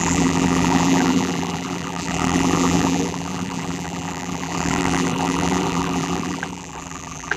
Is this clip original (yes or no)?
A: no